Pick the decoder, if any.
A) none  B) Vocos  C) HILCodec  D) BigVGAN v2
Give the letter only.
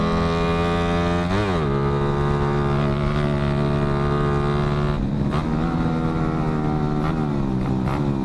A